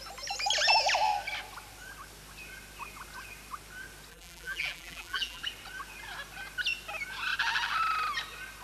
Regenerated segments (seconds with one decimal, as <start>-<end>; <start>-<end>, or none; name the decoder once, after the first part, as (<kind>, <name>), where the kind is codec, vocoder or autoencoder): 4.1-5.4 (vocoder, BigVGAN v2)